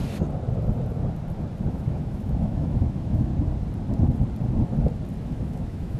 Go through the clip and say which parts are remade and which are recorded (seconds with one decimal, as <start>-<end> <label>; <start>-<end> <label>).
0.0-1.7 recorded; 1.7-3.3 remade; 3.3-5.2 recorded; 5.2-6.0 remade